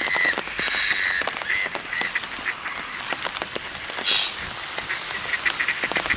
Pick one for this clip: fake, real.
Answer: real